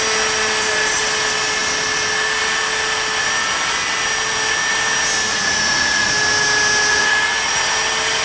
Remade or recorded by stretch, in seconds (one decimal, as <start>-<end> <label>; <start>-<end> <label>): 0.0-5.3 recorded; 5.3-6.1 remade; 6.1-6.9 recorded; 6.9-7.6 remade; 7.6-8.2 recorded